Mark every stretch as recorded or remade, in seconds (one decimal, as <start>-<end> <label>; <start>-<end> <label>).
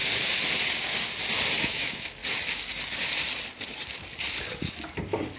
0.0-1.6 recorded; 1.6-2.2 remade; 2.2-5.4 recorded